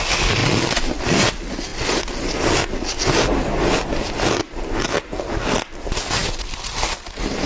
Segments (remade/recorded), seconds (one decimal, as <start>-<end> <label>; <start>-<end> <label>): 0.0-7.5 recorded